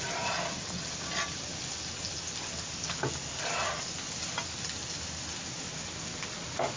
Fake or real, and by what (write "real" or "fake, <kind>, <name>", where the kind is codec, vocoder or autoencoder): real